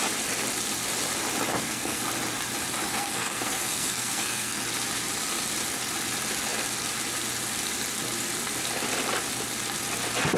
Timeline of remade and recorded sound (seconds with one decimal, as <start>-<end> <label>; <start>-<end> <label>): 0.0-1.5 recorded; 1.5-2.0 remade; 2.0-2.9 recorded; 2.9-4.6 remade; 4.6-10.4 recorded